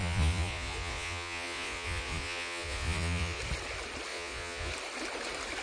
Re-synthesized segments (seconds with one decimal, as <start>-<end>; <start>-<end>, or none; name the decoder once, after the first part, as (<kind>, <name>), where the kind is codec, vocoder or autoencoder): 0.0-3.4 (vocoder, Vocos); 4.1-4.7